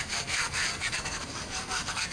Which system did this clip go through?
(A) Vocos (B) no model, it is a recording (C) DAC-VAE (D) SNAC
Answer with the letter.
D